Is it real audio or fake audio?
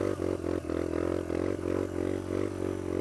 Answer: real